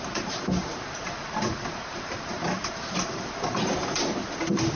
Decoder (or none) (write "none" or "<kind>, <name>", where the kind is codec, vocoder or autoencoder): none